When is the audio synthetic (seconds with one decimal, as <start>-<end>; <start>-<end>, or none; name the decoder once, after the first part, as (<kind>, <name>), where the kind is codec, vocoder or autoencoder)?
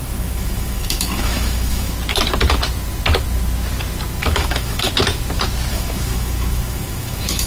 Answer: 0.0-1.9 (autoencoder, DAC-VAE); 4.2-4.9; 5.7-7.5